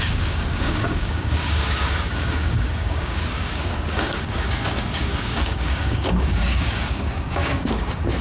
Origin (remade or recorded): remade